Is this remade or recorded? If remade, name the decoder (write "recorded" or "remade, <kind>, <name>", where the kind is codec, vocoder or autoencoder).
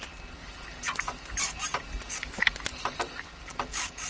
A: recorded